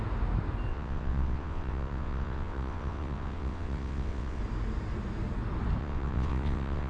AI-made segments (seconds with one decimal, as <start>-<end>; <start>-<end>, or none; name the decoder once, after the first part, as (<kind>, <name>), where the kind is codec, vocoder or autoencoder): 0.7-4.4 (vocoder, WaveNeXt); 5.8-6.9